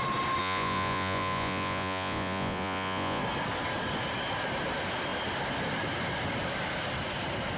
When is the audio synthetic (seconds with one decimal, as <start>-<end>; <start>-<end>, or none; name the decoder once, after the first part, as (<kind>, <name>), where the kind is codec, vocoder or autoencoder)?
0.4-3.2 (vocoder, Vocos)